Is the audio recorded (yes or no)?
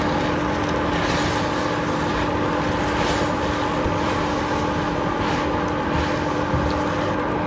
yes